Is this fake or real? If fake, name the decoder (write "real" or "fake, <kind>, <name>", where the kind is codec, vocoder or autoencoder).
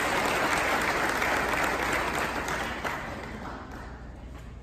real